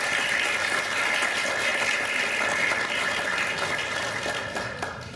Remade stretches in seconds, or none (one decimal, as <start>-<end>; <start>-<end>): none